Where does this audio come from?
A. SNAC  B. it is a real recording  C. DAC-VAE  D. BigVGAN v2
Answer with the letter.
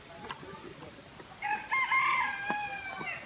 B